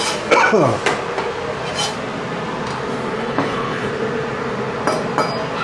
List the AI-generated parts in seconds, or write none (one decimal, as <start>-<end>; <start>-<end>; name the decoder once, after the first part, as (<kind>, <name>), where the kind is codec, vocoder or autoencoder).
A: 3.2-3.9 (codec, HILCodec)